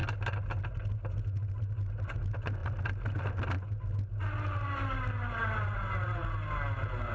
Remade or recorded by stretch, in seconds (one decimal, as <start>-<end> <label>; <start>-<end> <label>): 0.0-7.1 recorded